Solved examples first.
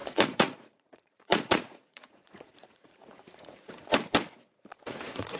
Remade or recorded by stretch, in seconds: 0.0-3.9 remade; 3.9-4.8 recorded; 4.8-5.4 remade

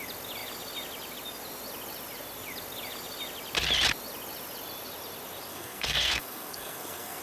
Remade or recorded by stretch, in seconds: 0.0-5.5 recorded; 5.5-7.2 remade

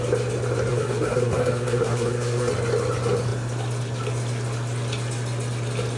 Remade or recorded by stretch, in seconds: 0.0-0.7 recorded; 0.7-2.5 remade; 2.5-6.0 recorded

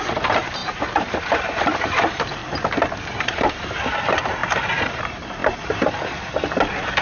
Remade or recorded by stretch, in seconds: 0.0-2.4 remade; 2.4-3.1 recorded; 3.1-5.4 remade; 5.4-7.0 recorded

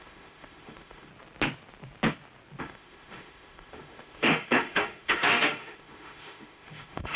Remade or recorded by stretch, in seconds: 0.0-1.1 remade; 1.1-2.6 recorded; 2.6-7.2 remade

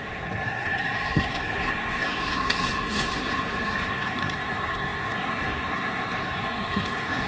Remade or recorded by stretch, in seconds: 0.0-7.3 remade